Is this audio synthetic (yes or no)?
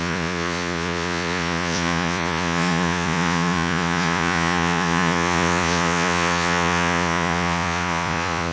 yes